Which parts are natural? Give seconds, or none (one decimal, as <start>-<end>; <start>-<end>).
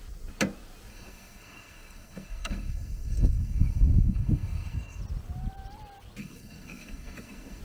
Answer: 0.0-0.9; 5.0-6.2